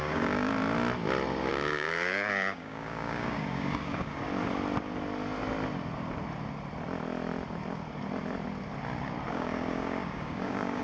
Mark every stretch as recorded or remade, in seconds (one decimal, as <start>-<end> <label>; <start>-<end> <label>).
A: 0.0-0.5 remade; 0.5-1.5 recorded; 1.5-4.2 remade; 4.2-9.3 recorded; 9.3-10.8 remade